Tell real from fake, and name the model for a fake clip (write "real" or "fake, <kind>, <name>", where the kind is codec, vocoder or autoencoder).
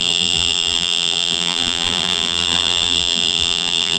fake, vocoder, BigVGAN v2